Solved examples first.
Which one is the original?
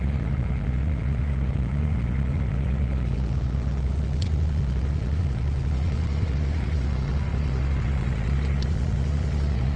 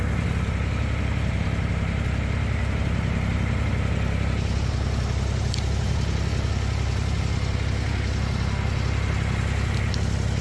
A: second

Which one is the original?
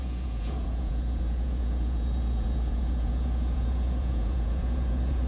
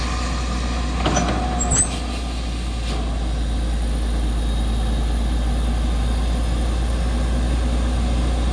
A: second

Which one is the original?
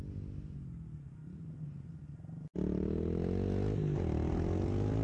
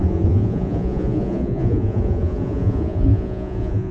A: first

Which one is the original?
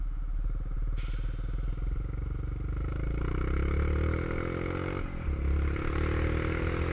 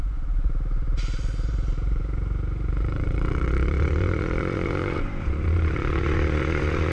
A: first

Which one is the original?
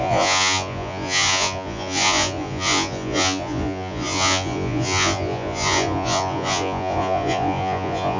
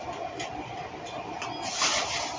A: second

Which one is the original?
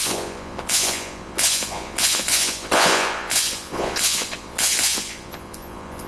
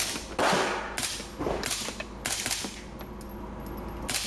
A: second